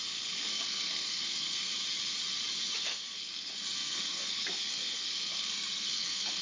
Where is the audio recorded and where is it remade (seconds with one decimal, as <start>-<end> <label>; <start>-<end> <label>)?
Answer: 0.0-1.7 remade; 1.7-2.8 recorded; 2.8-6.4 remade